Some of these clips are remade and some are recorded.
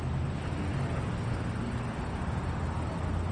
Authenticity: recorded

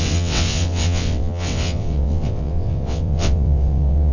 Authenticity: remade